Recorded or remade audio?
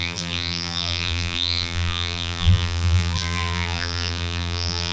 remade